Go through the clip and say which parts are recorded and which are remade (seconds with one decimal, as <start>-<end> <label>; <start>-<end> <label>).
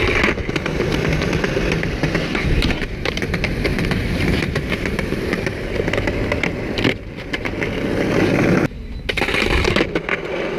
0.0-0.4 recorded; 0.4-3.3 remade; 3.3-3.7 recorded; 3.7-5.8 remade; 5.8-10.6 recorded